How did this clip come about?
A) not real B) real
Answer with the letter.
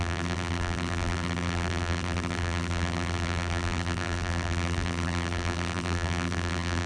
A